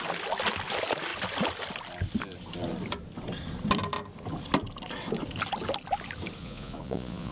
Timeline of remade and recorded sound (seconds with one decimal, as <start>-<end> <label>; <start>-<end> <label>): 0.0-6.4 recorded; 6.4-7.3 remade